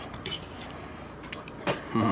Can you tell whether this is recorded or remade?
recorded